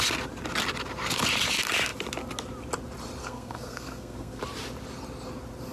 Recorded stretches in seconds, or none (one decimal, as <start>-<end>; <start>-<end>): 0.0-3.2; 4.4-5.7